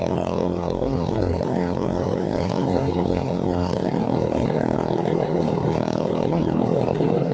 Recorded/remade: remade